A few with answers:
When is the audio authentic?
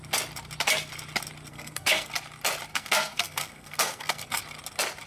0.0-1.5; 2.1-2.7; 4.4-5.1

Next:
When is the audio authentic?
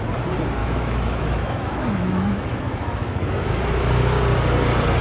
0.0-0.6; 3.6-5.0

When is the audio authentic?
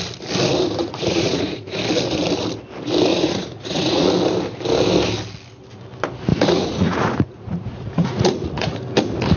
0.0-0.8; 1.8-3.1; 4.1-6.3; 8.8-9.4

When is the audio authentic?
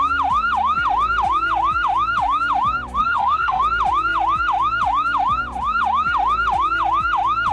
0.0-3.0; 3.6-7.5